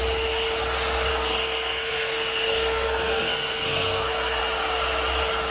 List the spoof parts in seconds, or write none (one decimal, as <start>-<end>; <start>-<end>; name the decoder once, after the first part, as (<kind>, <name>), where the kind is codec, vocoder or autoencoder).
1.1-4.4 (codec, SNAC)